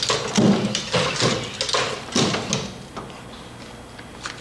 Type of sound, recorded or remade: recorded